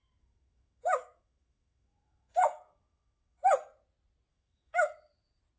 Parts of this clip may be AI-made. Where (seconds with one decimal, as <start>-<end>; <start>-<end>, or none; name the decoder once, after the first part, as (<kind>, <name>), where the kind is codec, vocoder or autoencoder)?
0.0-3.4 (autoencoder, DAC-VAE); 4.3-4.9